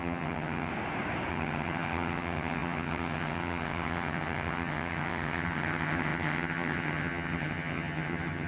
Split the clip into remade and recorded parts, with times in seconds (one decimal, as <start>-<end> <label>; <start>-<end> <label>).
0.0-0.7 remade; 0.7-1.3 recorded; 1.3-8.5 remade